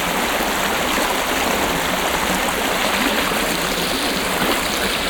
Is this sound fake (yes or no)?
no